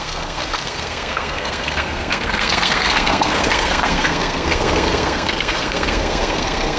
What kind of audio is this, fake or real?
fake